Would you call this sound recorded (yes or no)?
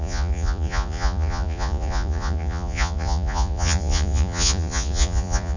no